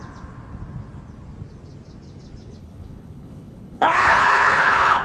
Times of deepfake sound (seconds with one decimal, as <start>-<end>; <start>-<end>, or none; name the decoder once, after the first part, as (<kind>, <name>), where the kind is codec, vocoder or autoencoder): 2.6-5.0 (codec, HILCodec)